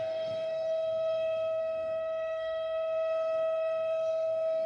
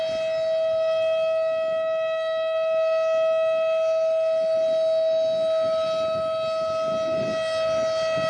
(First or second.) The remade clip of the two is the first